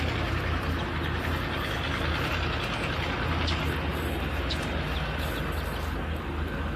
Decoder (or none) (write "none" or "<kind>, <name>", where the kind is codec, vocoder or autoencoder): none